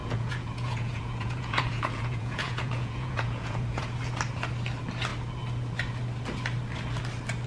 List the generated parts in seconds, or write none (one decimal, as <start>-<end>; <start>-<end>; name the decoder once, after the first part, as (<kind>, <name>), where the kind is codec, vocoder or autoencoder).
0.0-3.9 (vocoder, Vocos)